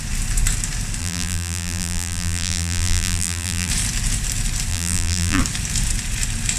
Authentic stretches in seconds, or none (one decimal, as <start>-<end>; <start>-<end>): 0.0-1.0; 3.7-4.7; 5.4-6.6